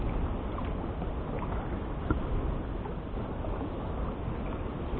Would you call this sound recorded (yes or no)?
yes